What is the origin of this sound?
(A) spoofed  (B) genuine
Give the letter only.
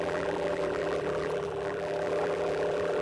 A